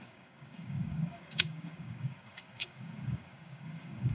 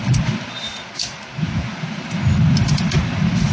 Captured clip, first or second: second